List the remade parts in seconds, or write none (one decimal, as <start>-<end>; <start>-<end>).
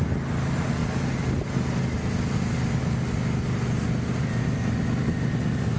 none